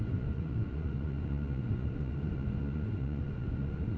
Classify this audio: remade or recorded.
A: remade